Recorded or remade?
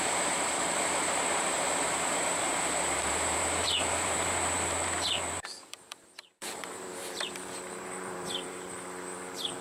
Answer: remade